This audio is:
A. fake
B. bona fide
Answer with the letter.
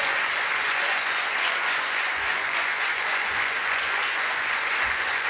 A